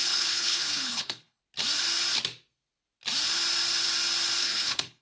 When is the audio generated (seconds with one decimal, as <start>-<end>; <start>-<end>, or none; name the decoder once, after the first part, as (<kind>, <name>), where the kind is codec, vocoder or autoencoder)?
0.0-1.4 (codec, HILCodec); 4.4-5.0